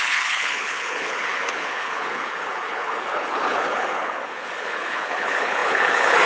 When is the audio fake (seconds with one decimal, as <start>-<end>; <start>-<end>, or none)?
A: 0.0-6.3